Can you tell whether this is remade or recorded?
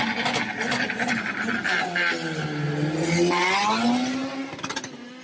recorded